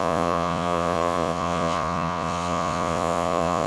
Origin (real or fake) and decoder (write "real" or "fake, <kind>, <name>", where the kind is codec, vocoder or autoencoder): fake, vocoder, Vocos